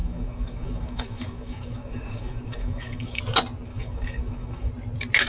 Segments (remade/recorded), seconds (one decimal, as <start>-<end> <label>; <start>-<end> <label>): 0.0-3.2 remade; 3.2-3.7 recorded; 3.7-4.7 remade; 4.7-5.3 recorded